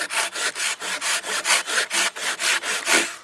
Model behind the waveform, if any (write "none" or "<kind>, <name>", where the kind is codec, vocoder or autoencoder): none